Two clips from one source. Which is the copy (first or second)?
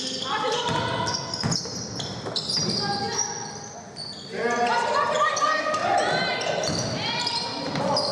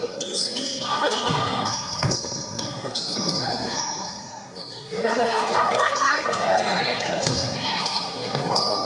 second